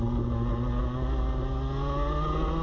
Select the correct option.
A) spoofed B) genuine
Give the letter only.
B